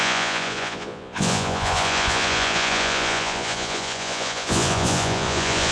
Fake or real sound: fake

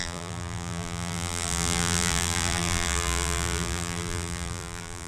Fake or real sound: fake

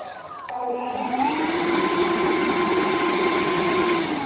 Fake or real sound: fake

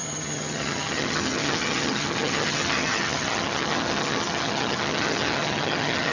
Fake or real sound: fake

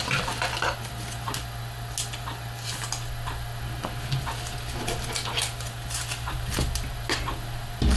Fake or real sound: real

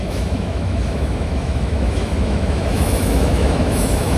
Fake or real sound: fake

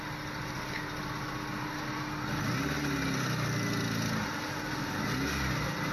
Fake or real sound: real